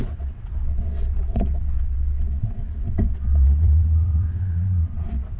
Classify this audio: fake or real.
fake